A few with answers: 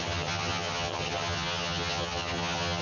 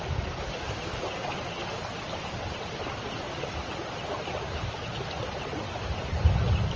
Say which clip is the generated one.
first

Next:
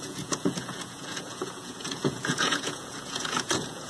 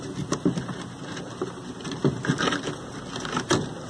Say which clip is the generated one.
first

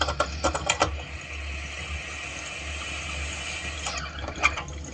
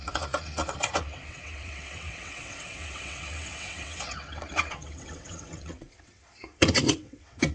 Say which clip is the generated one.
second